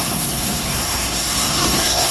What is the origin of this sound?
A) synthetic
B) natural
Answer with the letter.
A